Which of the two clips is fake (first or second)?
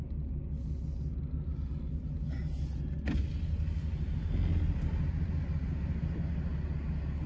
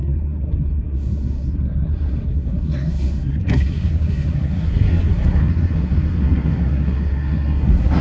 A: second